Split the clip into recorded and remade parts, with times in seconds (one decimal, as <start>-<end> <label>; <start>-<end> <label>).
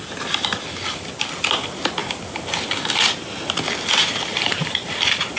0.0-4.3 recorded; 4.3-5.4 remade